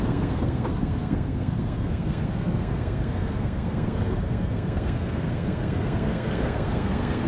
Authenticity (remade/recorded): remade